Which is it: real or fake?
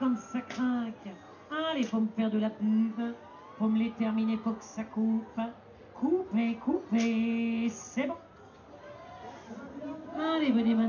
real